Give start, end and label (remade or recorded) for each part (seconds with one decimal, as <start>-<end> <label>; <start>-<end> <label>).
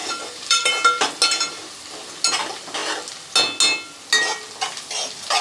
0.0-0.7 remade; 0.7-5.4 recorded